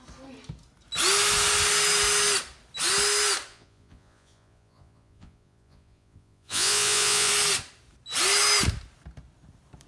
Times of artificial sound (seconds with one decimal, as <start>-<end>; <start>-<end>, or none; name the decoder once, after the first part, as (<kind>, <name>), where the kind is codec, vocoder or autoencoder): 3.5-7.3 (vocoder, Vocos)